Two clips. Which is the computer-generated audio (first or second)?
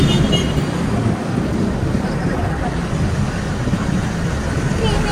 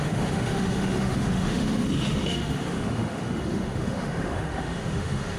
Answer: second